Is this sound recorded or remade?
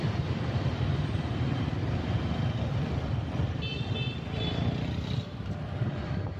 remade